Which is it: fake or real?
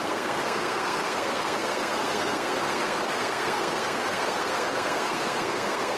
fake